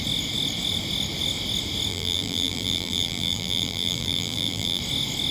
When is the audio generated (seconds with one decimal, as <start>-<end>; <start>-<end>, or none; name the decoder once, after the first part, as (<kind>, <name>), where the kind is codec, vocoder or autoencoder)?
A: 1.9-4.8 (vocoder, BigVGAN v2)